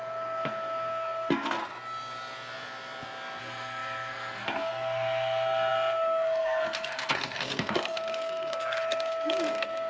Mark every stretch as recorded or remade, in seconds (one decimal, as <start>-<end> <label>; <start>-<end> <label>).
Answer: 0.0-1.6 remade; 1.6-3.4 recorded; 3.4-9.9 remade